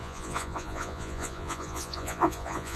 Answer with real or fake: fake